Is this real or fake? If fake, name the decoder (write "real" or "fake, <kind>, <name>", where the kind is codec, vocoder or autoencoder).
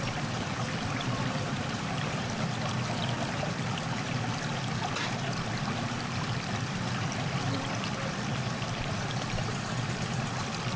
fake, vocoder, BigVGAN v2